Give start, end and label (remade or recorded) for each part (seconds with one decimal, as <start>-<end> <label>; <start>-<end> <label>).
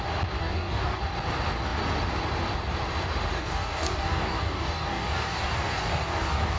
0.0-0.4 recorded; 0.4-1.0 remade; 1.0-3.3 recorded; 3.3-6.6 remade